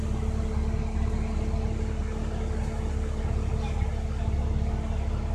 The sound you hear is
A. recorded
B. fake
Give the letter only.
A